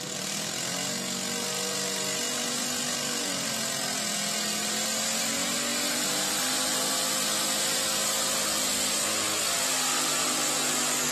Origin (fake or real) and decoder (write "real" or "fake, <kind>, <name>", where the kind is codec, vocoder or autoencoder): real